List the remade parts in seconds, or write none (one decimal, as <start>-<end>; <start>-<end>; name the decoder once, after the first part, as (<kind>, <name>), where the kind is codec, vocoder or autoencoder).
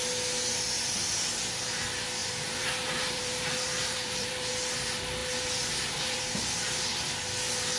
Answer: 2.2-4.5 (vocoder, BigVGAN v2); 5.2-6.9